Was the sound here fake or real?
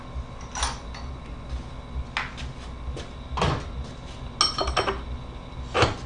real